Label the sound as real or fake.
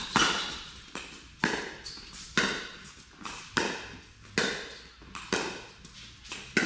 real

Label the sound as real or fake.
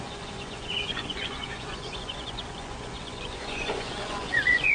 fake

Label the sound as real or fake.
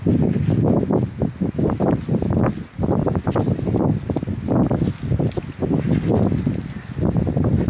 real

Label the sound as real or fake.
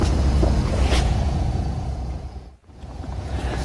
fake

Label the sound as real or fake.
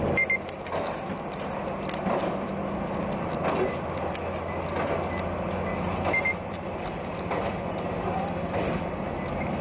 real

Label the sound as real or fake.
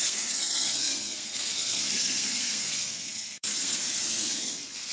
fake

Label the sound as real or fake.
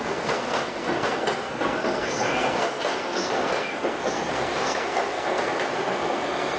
fake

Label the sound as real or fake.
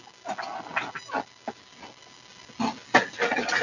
real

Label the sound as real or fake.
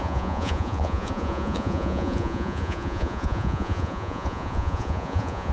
fake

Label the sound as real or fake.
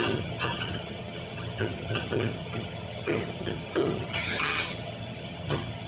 fake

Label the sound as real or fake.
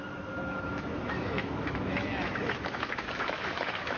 fake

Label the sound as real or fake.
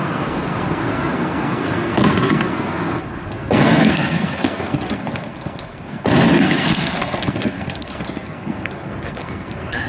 fake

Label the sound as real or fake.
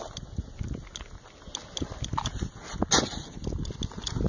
real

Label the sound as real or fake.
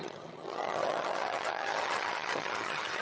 fake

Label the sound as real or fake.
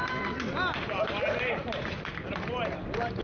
real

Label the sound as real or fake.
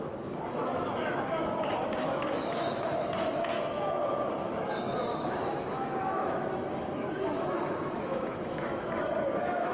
fake